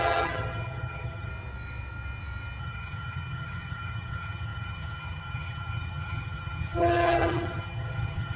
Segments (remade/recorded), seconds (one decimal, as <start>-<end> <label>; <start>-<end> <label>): 0.0-1.3 remade; 1.3-2.6 recorded; 2.6-8.4 remade